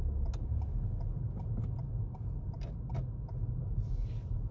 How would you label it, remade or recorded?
recorded